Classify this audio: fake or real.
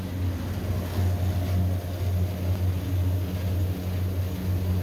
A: real